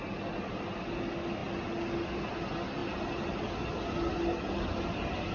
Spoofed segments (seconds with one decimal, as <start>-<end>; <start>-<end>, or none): none